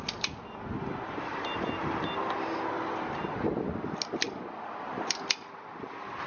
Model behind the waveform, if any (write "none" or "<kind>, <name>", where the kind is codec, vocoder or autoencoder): none